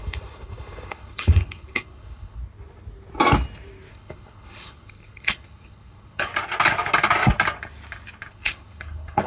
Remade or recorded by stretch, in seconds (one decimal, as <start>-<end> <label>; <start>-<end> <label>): 0.0-2.4 remade; 2.4-3.9 recorded; 3.9-6.3 remade; 6.3-8.3 recorded; 8.3-9.3 remade